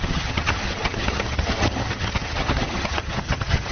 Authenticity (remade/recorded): remade